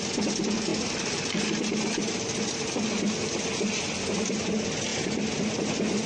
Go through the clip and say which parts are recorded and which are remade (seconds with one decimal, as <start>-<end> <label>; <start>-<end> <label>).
0.0-6.1 recorded